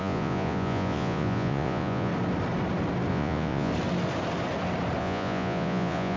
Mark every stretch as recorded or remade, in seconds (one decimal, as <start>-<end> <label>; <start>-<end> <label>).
0.0-2.1 remade; 2.1-3.1 recorded; 3.1-3.7 remade; 3.7-5.0 recorded; 5.0-6.2 remade